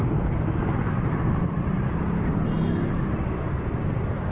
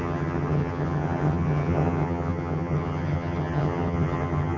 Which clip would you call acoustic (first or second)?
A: first